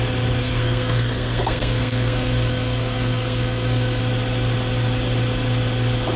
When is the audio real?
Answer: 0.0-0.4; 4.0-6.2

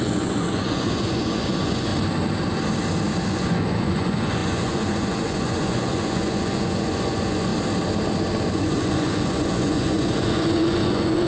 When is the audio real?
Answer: 1.9-3.3; 7.5-8.5

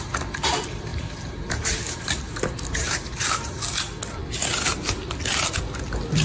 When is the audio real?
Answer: 0.0-0.9; 3.6-6.2